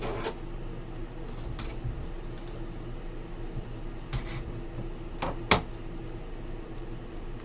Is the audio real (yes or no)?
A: yes